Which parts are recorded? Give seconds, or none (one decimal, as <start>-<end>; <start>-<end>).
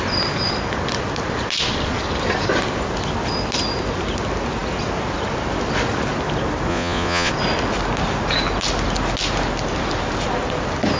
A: 0.0-6.7; 7.3-11.0